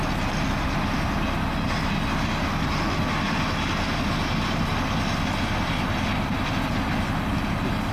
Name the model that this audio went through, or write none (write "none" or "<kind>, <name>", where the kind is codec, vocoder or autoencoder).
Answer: none